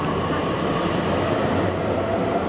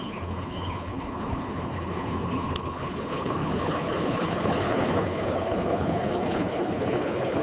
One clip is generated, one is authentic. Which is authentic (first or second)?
first